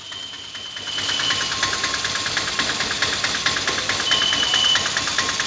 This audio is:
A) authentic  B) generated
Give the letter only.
A